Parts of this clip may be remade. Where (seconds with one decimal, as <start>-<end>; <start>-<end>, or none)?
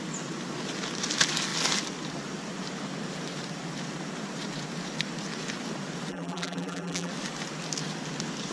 6.1-7.1